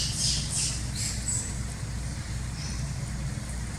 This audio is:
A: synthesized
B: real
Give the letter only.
B